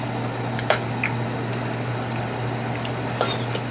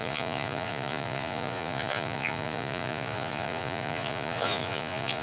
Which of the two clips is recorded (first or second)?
first